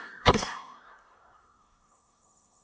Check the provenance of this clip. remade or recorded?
remade